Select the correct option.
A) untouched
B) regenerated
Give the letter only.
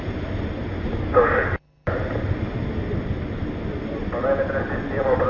A